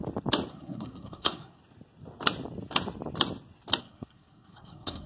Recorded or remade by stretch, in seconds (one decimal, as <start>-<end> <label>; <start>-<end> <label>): 0.0-0.5 recorded; 0.5-1.6 remade; 1.6-3.8 recorded; 3.8-5.1 remade